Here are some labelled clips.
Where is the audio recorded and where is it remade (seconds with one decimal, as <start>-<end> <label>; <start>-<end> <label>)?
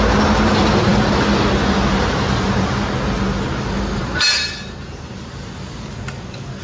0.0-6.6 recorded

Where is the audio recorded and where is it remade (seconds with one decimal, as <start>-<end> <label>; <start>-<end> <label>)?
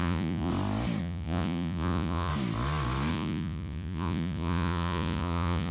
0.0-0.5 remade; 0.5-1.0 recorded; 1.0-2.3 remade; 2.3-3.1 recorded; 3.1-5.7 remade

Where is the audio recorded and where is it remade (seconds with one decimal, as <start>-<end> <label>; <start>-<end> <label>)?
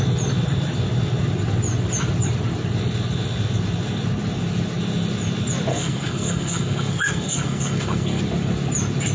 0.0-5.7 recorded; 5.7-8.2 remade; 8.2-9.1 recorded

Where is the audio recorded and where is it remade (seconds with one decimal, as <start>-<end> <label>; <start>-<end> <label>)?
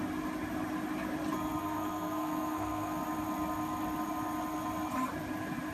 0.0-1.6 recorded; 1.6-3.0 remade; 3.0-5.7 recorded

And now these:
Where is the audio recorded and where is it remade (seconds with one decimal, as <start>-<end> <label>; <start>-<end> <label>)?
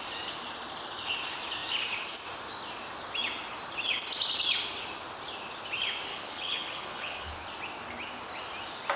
0.0-6.1 recorded; 6.1-7.3 remade; 7.3-9.0 recorded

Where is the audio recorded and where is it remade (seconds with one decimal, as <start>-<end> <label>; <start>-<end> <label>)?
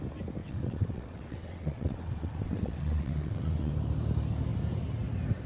0.0-0.4 recorded; 0.4-3.7 remade; 3.7-5.5 recorded